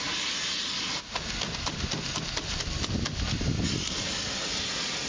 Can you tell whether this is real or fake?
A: real